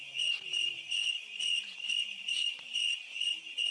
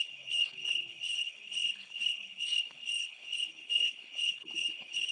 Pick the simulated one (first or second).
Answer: second